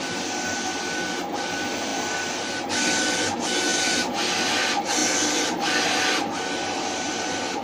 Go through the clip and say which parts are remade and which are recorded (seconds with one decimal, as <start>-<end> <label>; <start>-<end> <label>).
0.0-3.7 recorded; 3.7-4.6 remade; 4.6-7.6 recorded